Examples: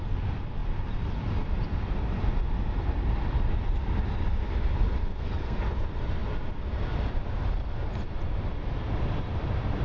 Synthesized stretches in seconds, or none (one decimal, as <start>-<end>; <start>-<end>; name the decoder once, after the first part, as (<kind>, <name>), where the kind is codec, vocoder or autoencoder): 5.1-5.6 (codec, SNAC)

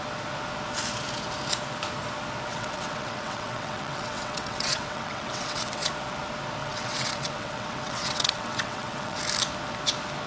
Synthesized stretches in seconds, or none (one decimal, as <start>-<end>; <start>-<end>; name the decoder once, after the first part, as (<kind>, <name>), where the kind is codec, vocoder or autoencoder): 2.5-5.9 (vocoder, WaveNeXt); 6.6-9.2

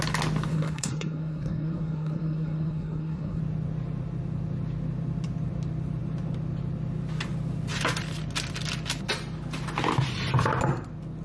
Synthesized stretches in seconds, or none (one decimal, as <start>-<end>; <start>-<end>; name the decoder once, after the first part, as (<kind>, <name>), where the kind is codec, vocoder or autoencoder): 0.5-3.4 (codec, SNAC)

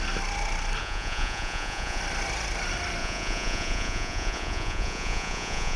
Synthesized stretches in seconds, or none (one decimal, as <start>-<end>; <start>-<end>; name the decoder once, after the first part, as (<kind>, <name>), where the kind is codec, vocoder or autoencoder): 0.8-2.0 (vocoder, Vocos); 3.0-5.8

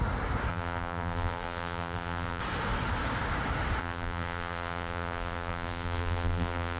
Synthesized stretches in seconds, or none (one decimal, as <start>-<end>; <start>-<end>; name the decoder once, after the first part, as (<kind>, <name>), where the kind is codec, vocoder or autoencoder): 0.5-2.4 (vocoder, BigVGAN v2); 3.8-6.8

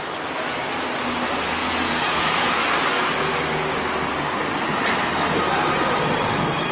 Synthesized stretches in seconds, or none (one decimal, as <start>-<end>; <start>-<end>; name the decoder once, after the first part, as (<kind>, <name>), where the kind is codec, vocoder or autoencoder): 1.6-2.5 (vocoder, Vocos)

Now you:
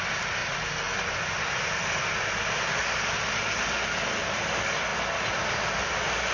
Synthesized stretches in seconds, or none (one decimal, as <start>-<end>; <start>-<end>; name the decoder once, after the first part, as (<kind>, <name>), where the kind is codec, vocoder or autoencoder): none

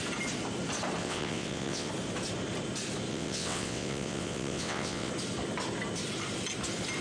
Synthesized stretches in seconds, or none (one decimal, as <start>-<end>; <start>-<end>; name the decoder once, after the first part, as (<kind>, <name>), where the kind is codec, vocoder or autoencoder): 1.0-1.9 (vocoder, WaveNeXt); 3.1-5.1